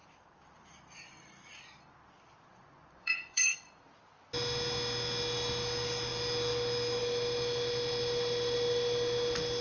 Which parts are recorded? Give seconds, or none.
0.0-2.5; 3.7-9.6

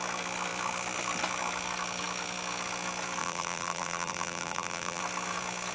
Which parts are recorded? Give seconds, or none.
0.0-3.2; 5.0-5.7

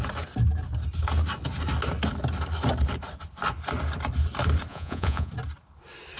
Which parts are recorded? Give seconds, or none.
0.0-4.7; 5.3-6.2

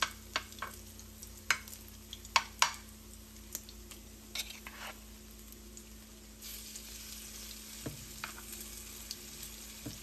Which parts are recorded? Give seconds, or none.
0.0-10.0